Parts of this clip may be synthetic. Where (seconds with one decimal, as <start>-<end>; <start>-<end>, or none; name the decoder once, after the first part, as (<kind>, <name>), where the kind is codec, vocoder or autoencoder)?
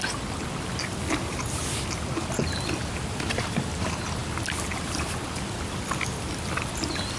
2.8-3.5 (vocoder, BigVGAN v2)